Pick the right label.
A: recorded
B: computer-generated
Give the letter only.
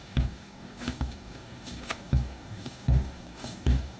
B